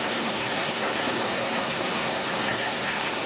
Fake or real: fake